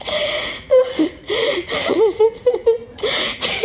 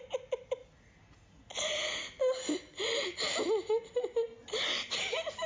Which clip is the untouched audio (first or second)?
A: second